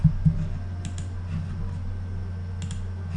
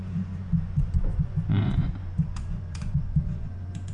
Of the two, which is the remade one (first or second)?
second